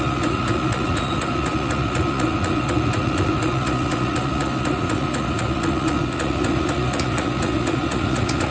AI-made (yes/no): yes